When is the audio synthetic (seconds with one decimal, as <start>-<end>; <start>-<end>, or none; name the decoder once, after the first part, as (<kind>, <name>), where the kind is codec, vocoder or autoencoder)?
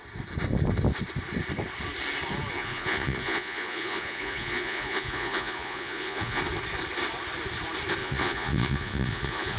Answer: 2.6-6.4 (vocoder, Vocos); 8.0-9.6